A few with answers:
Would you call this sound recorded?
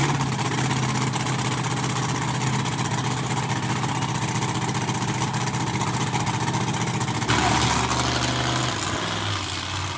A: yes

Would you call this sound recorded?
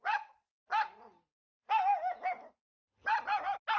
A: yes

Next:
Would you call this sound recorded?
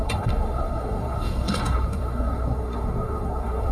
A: no